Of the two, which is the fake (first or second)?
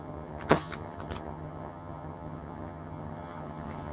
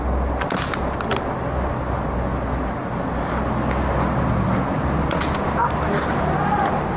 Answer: first